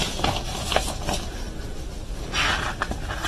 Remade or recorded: recorded